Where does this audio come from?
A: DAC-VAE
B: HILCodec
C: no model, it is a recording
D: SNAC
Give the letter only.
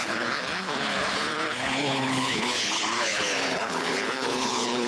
B